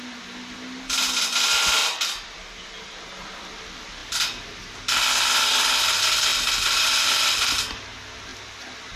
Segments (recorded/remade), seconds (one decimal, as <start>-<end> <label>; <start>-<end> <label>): 0.0-1.8 recorded; 1.8-3.1 remade; 3.1-6.3 recorded; 6.3-7.5 remade; 7.5-9.0 recorded